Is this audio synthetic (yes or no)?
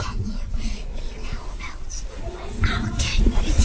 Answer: yes